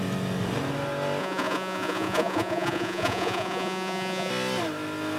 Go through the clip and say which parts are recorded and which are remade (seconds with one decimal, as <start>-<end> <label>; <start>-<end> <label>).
0.0-1.2 recorded; 1.2-4.3 remade; 4.3-5.2 recorded